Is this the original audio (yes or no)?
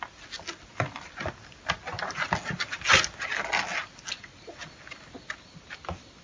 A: yes